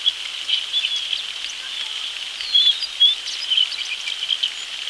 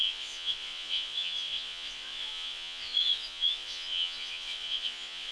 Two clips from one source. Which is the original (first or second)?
first